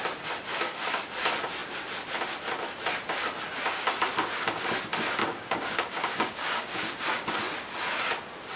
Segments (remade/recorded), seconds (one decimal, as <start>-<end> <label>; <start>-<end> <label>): 0.0-0.5 recorded; 0.5-1.0 remade; 1.0-5.2 recorded; 5.2-7.4 remade; 7.4-8.6 recorded